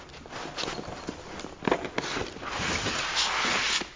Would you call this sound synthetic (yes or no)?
no